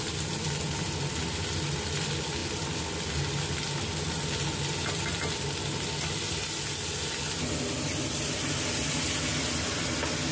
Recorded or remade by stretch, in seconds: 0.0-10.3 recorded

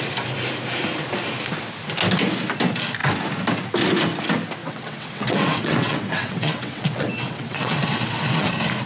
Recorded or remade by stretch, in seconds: 0.0-4.6 recorded; 4.6-8.5 remade; 8.5-8.9 recorded